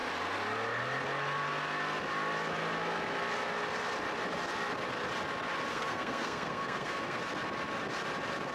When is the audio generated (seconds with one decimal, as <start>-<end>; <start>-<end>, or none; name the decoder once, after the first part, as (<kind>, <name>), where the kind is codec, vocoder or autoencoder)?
5.7-7.2 (codec, SNAC)